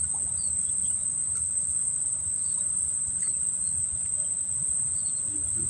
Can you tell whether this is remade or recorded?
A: recorded